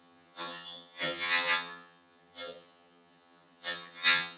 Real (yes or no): no